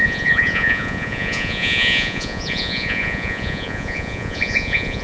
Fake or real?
fake